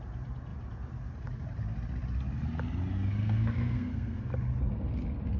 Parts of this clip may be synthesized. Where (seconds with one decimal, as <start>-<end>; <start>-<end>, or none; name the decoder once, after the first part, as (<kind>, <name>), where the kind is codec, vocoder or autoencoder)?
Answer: 3.2-4.3 (codec, SNAC)